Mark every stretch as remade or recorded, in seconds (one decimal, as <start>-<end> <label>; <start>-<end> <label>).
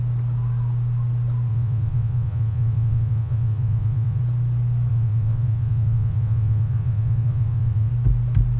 0.0-1.5 recorded; 1.5-4.2 remade; 4.2-4.9 recorded; 4.9-7.9 remade; 7.9-8.6 recorded